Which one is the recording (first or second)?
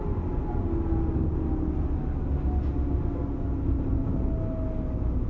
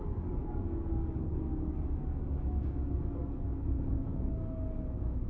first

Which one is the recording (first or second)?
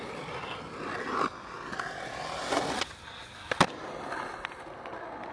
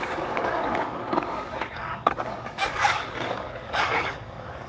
first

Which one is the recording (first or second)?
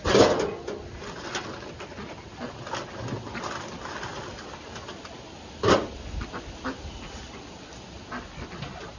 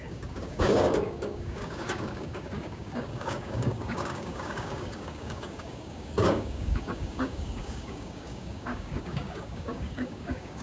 first